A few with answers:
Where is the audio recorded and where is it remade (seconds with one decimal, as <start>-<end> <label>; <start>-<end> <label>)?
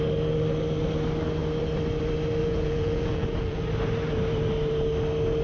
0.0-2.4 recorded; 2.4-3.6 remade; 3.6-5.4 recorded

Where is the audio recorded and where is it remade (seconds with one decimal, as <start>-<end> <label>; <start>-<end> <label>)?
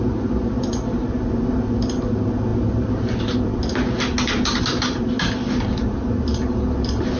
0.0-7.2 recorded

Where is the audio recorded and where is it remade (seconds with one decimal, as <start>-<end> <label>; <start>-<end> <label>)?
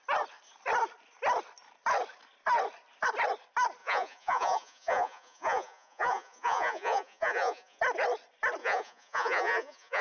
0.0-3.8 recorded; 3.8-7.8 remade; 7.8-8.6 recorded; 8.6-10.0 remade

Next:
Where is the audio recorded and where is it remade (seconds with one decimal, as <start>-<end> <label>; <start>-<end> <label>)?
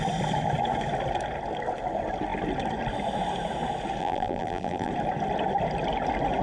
0.0-4.0 recorded; 4.0-4.9 remade; 4.9-6.4 recorded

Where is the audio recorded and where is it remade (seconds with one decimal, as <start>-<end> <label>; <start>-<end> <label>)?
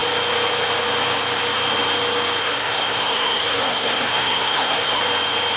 0.0-2.4 recorded; 2.4-5.0 remade; 5.0-5.6 recorded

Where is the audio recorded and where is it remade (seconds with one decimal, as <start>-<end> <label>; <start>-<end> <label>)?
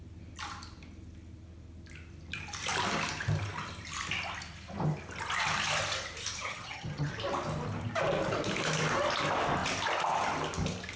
0.0-6.4 recorded; 6.4-7.1 remade; 7.1-11.0 recorded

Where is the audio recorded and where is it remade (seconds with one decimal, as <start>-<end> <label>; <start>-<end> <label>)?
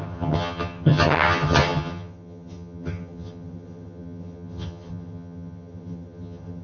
0.0-6.6 remade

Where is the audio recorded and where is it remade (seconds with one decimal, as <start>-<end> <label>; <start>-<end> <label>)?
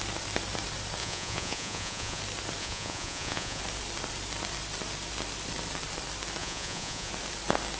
0.0-1.0 recorded; 1.0-2.2 remade; 2.2-2.6 recorded; 2.6-3.6 remade; 3.6-6.4 recorded; 6.4-7.1 remade; 7.1-7.8 recorded